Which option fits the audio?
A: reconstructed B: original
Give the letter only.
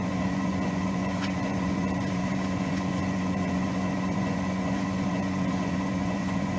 A